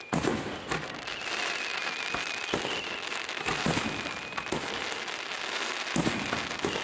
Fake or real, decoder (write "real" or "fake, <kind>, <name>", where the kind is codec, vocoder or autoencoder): real